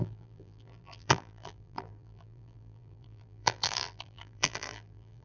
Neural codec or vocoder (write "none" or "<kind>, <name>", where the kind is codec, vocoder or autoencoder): vocoder, BigVGAN v2